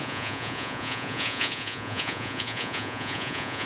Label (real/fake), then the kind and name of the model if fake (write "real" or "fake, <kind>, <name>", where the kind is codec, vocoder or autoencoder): fake, vocoder, Vocos